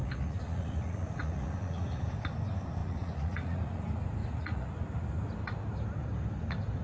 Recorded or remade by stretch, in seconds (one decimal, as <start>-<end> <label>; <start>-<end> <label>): 0.0-2.0 remade; 2.0-2.8 recorded; 2.8-3.8 remade; 3.8-4.2 recorded; 4.2-4.7 remade; 4.7-6.8 recorded